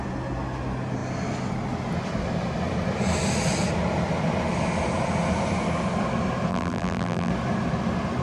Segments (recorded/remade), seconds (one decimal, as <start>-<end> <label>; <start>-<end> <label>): 0.0-6.5 recorded; 6.5-7.3 remade; 7.3-8.2 recorded